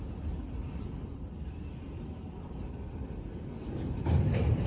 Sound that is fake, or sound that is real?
real